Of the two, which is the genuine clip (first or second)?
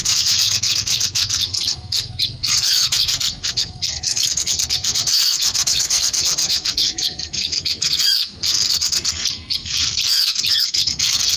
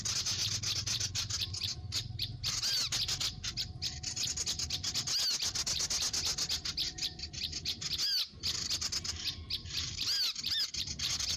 second